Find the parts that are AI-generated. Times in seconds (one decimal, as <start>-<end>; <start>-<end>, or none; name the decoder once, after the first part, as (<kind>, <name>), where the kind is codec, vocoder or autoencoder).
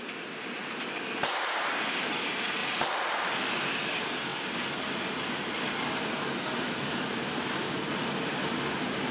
2.6-3.5 (vocoder, BigVGAN v2)